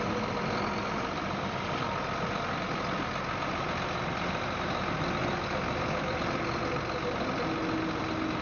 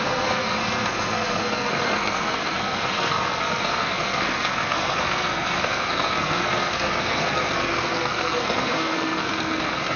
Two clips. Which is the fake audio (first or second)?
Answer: second